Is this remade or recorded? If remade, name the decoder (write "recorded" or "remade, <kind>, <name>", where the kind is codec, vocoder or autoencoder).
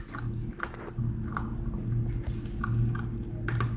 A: recorded